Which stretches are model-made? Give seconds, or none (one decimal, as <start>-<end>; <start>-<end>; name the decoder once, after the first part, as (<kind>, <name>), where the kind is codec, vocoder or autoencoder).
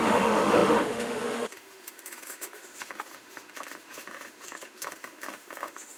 0.0-6.0 (autoencoder, DAC-VAE)